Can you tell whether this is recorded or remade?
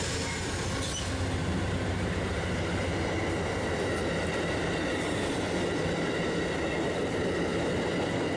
recorded